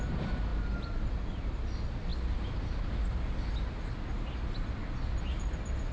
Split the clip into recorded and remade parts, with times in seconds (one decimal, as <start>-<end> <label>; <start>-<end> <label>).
0.0-5.9 recorded